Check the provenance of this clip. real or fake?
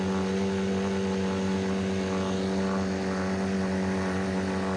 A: real